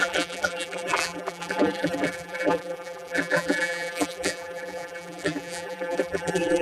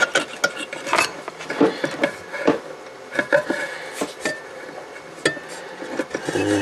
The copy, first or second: first